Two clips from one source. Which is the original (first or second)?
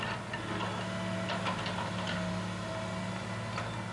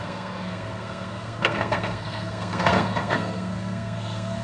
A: first